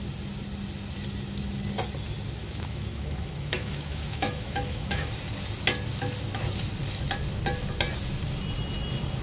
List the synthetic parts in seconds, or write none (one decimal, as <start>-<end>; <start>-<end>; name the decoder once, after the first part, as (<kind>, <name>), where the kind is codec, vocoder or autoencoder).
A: 2.4-5.1 (autoencoder, DAC-VAE)